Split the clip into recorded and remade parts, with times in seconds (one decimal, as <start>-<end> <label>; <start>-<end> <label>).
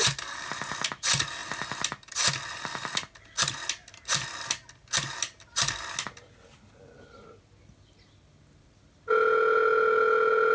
0.0-10.5 recorded